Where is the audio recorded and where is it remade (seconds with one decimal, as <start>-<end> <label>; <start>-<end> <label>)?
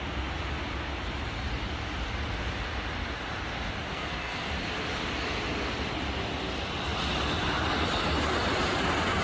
0.0-3.9 recorded; 3.9-4.5 remade; 4.5-9.2 recorded